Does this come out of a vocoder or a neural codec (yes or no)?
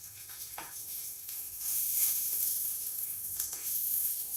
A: yes